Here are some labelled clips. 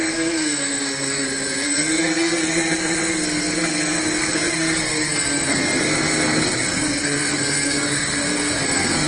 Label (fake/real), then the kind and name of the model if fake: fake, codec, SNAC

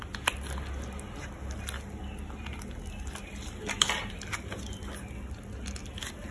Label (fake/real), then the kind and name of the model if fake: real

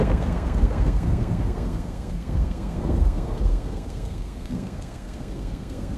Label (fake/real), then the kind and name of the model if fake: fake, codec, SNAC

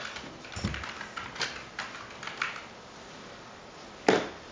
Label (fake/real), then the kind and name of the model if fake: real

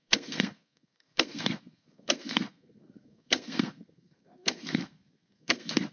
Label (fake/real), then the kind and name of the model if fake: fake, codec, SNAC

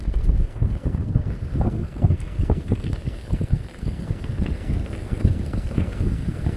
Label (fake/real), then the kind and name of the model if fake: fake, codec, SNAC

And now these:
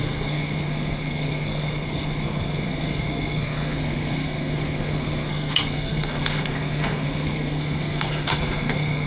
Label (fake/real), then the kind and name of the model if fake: fake, codec, SNAC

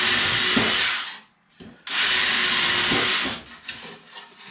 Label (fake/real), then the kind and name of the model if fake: real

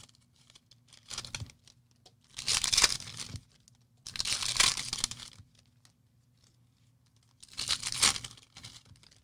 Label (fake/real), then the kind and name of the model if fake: real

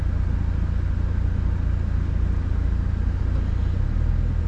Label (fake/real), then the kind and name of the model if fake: real